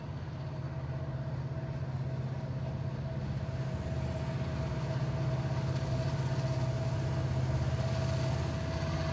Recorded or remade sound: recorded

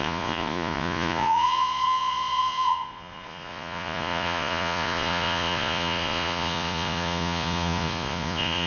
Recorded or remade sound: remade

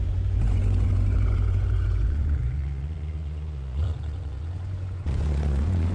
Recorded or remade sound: remade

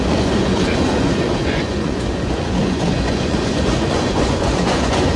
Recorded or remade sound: remade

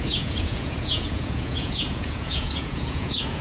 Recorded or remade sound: remade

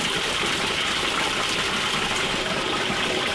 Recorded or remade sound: recorded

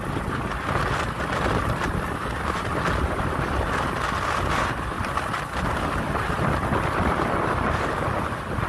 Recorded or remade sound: recorded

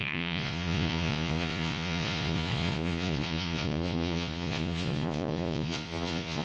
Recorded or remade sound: remade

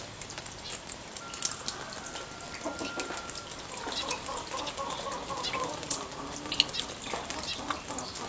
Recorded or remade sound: recorded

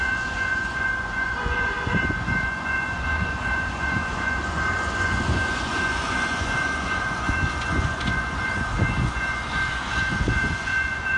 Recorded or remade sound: remade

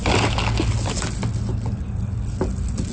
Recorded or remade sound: recorded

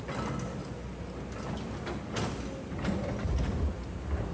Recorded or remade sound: recorded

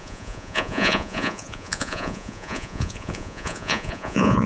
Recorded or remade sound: remade